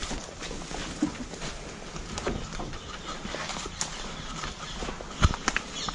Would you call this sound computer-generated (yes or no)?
no